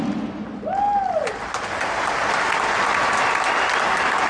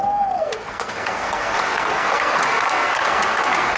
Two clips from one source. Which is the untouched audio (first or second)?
first